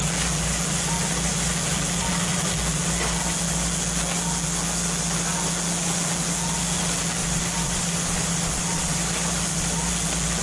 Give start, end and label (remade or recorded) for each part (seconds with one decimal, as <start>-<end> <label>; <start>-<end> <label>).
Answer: 0.0-7.2 recorded; 7.2-9.9 remade; 9.9-10.4 recorded